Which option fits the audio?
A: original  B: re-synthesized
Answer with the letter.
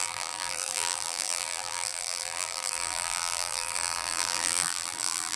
B